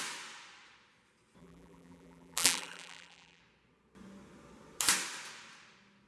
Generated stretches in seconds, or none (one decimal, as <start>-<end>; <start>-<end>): 1.4-3.4